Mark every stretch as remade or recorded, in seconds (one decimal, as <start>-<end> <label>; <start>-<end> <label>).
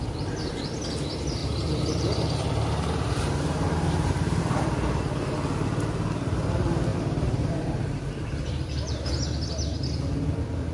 0.0-1.4 recorded; 1.4-4.4 remade; 4.4-6.9 recorded; 6.9-9.1 remade; 9.1-10.7 recorded